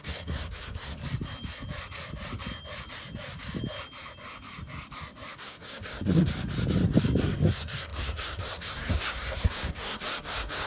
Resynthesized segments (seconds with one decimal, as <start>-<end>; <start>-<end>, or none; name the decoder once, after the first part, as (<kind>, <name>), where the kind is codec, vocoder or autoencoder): 0.0-1.0 (codec, SNAC); 5.4-6.3; 7.2-10.7